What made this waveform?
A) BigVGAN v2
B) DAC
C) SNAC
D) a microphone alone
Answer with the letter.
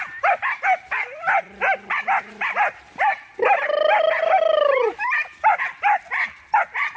A